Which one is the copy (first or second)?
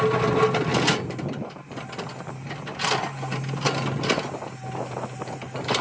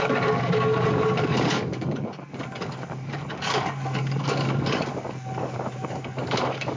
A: second